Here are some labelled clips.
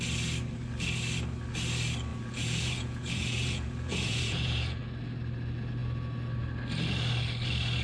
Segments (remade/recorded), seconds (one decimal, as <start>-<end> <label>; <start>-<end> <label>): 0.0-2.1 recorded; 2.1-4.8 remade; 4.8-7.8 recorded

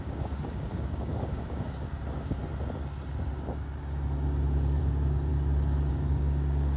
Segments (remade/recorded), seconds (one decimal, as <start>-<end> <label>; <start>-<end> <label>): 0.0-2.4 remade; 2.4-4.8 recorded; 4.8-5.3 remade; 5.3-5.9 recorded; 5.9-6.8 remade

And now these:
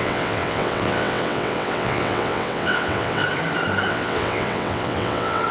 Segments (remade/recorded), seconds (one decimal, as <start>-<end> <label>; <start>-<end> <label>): 0.0-3.2 remade; 3.2-3.9 recorded; 3.9-5.5 remade